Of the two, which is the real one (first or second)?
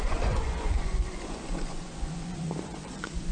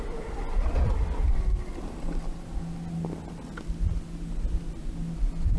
second